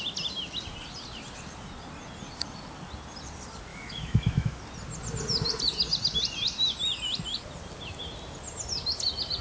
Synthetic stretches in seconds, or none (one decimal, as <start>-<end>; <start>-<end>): 3.7-4.6